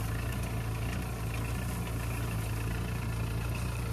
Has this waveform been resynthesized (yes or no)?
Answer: no